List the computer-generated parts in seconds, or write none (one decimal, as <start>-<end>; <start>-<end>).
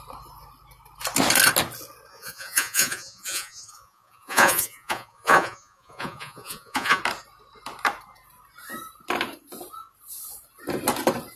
2.1-7.0